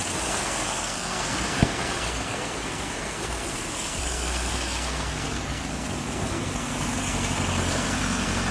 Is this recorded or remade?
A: remade